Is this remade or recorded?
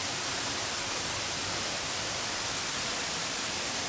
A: recorded